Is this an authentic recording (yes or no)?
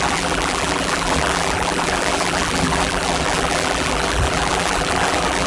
no